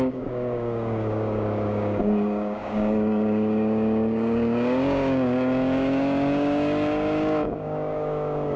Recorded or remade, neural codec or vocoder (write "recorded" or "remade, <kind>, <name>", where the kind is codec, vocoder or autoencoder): remade, codec, DAC